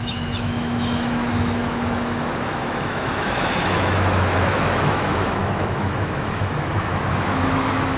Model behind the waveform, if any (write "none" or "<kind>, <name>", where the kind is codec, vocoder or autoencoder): autoencoder, DAC-VAE